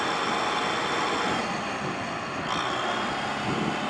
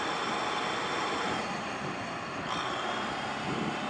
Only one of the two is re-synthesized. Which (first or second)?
second